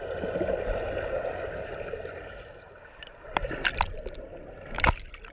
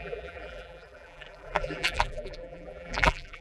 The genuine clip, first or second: first